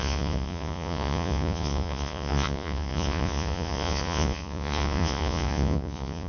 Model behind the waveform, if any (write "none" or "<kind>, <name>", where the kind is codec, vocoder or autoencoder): vocoder, Vocos